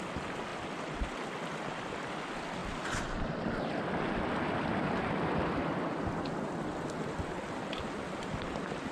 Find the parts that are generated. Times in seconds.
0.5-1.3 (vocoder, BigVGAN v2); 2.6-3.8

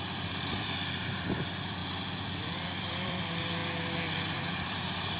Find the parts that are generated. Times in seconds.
0.0-3.6 (vocoder, BigVGAN v2); 4.5-5.2